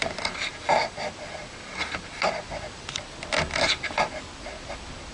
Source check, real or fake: fake